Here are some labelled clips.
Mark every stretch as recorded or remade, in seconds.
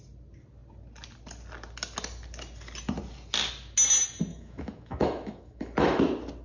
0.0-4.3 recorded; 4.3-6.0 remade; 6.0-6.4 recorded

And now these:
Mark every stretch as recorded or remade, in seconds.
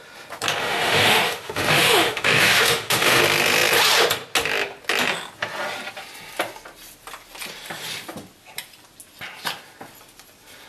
0.0-0.6 recorded; 0.6-3.2 remade; 3.2-10.7 recorded